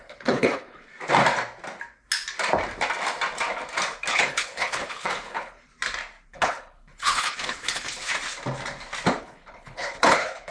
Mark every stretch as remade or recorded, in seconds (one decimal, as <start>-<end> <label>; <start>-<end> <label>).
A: 0.0-0.9 remade; 0.9-4.1 recorded; 4.1-5.7 remade; 5.7-6.3 recorded; 6.3-8.1 remade; 8.1-9.2 recorded; 9.2-10.5 remade